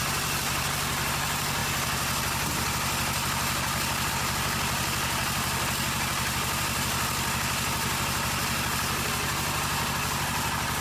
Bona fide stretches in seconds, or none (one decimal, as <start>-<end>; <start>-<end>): 0.0-10.8